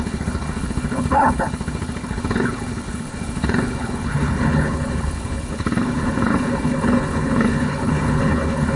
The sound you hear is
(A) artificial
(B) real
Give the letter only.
A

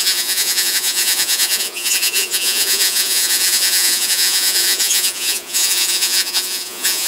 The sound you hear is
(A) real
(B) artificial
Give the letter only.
B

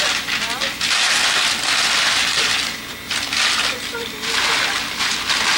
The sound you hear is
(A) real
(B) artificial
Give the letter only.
A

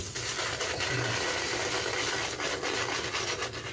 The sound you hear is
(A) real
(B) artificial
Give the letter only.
A